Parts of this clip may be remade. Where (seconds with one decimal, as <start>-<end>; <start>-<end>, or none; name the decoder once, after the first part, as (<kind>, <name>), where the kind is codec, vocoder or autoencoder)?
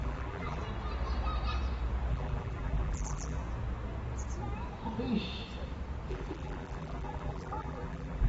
0.0-0.6 (vocoder, BigVGAN v2); 2.1-3.4; 6.1-8.3